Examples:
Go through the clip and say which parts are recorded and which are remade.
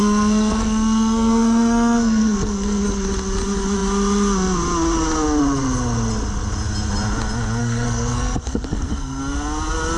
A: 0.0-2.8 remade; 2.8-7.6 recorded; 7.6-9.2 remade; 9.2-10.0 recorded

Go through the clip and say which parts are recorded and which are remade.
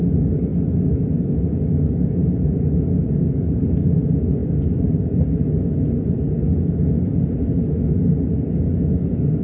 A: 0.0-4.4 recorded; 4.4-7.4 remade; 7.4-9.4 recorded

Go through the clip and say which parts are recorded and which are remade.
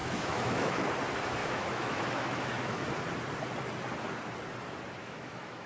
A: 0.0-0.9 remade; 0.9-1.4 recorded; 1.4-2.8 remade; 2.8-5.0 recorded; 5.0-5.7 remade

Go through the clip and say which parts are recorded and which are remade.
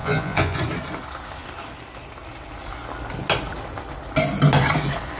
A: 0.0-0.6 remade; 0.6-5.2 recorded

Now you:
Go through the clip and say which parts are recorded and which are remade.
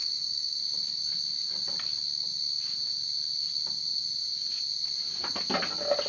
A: 0.0-0.6 remade; 0.6-6.1 recorded